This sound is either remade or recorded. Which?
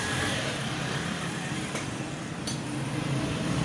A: remade